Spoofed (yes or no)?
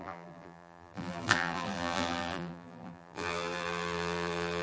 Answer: yes